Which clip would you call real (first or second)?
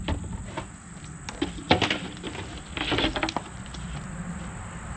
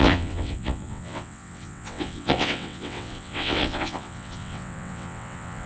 first